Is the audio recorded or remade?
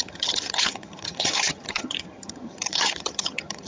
remade